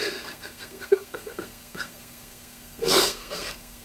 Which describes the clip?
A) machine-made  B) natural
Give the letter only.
A